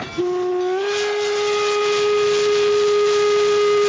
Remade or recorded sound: recorded